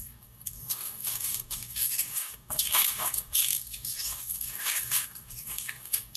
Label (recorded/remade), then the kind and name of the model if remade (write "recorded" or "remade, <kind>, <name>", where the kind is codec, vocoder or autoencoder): remade, codec, DAC